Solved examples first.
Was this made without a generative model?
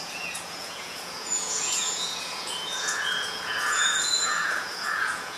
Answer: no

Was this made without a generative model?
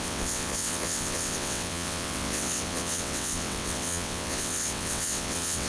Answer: no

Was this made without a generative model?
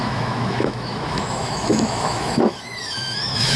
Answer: no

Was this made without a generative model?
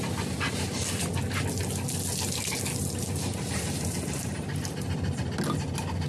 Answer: yes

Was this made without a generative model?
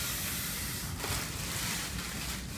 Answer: no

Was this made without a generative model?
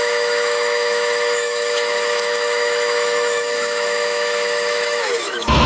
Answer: no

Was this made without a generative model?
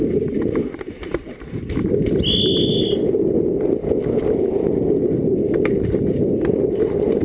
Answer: yes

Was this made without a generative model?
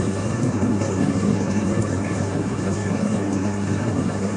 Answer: no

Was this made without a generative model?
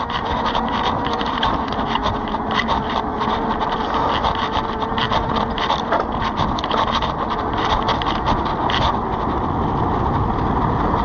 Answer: yes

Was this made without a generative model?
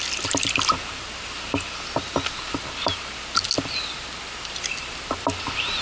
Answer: yes